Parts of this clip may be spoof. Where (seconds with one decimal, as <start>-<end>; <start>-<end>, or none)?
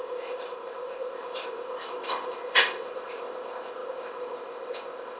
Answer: 0.0-5.2